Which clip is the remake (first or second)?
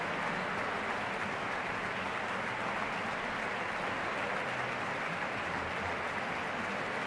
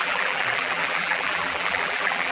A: second